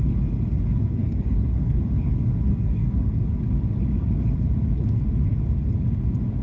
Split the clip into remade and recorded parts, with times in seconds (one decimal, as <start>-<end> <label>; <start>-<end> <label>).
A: 0.0-1.0 recorded; 1.0-1.8 remade; 1.8-2.5 recorded; 2.5-3.4 remade; 3.4-6.4 recorded